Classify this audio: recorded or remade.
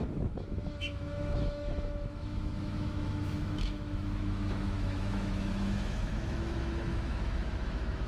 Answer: remade